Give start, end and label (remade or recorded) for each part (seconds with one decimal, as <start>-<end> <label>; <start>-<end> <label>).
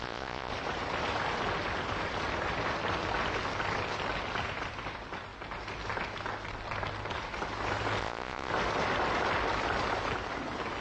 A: 0.0-0.5 remade; 0.5-8.0 recorded; 8.0-8.5 remade; 8.5-10.8 recorded